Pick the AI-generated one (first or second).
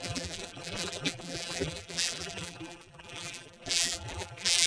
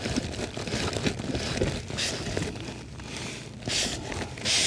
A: first